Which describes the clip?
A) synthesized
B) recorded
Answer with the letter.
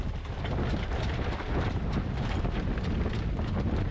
B